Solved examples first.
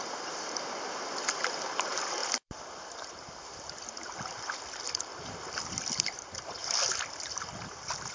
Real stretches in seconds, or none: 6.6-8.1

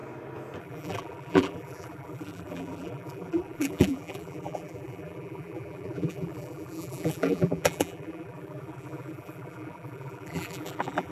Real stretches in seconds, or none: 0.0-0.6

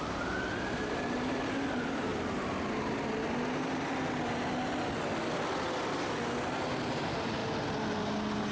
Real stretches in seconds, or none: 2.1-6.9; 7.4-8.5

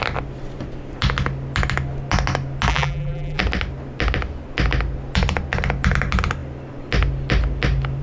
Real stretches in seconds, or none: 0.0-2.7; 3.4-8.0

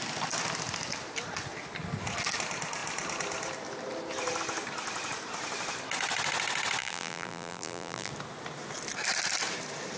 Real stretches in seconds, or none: 0.0-6.8; 8.1-10.0

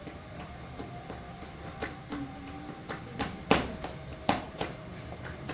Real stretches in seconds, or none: 0.0-2.8; 3.4-4.1

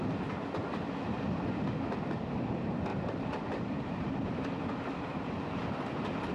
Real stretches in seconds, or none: 0.0-2.9

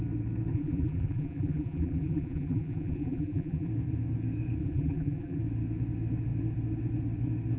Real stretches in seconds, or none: 0.0-0.5; 3.7-4.6; 5.4-7.6